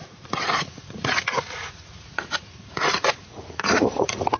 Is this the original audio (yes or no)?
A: no